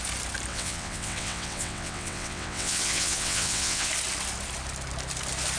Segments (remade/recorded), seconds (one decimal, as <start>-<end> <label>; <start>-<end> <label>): 0.0-0.5 recorded; 0.5-3.9 remade; 3.9-5.6 recorded